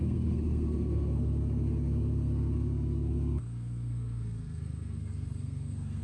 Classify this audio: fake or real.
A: fake